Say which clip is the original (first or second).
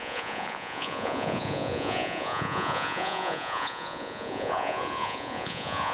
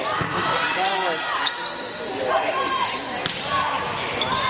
second